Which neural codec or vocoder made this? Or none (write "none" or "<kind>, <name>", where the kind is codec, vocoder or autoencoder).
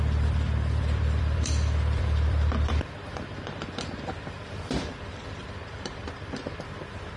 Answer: vocoder, BigVGAN v2